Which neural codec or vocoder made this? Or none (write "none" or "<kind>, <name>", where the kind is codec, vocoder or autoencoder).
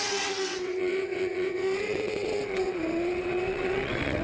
vocoder, WaveNeXt